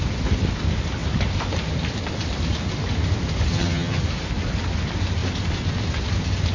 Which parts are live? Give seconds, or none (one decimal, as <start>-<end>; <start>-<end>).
0.0-3.5; 4.0-6.5